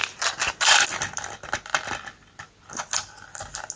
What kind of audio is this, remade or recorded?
recorded